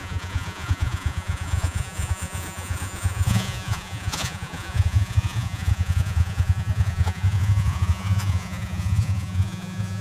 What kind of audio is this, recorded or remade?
remade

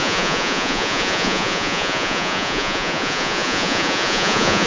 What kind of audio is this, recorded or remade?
remade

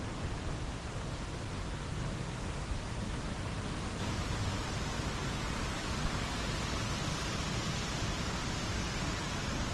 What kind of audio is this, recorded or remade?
recorded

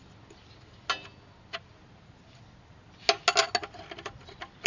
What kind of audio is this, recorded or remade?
recorded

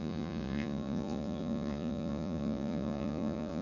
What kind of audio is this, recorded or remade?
remade